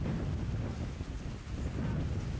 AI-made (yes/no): no